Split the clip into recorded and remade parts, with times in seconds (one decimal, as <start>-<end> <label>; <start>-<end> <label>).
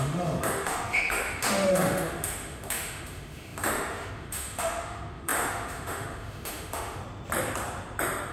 0.0-7.0 remade; 7.0-8.3 recorded